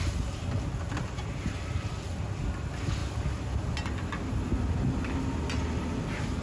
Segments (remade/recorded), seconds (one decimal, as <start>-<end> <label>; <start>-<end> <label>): 0.0-1.0 recorded; 1.0-1.9 remade; 1.9-6.4 recorded